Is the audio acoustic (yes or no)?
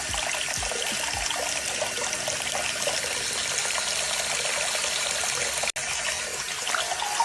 yes